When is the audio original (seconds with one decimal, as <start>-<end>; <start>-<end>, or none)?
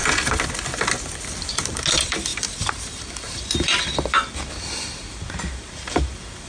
0.0-1.9